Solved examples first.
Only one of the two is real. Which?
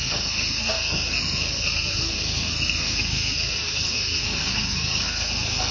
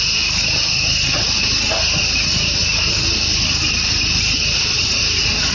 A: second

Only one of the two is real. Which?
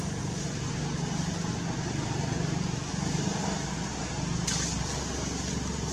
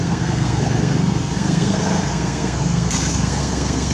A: first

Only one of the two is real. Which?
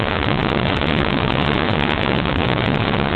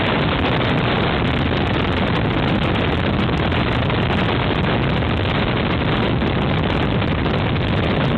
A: second